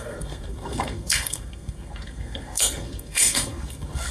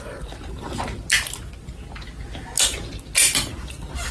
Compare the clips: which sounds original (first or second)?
second